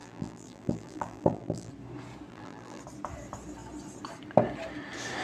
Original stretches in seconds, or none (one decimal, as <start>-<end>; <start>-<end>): 1.7-2.3; 2.8-5.2